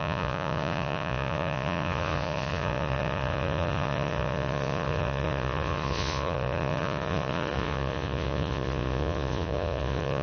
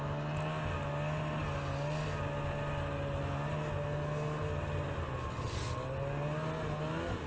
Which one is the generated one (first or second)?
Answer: first